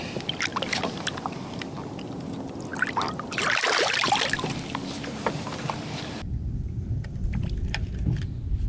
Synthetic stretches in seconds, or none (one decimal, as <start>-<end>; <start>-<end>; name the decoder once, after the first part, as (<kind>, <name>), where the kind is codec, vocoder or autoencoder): 0.5-2.1 (vocoder, BigVGAN v2); 2.7-4.3